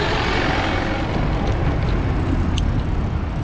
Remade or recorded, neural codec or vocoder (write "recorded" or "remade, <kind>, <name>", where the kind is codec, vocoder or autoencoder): recorded